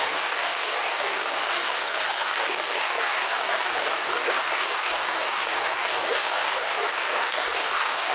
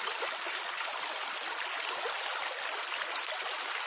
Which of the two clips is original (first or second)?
second